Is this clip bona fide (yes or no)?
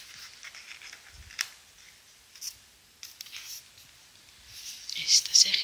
yes